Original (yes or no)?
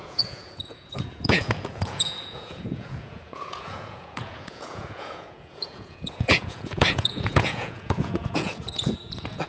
no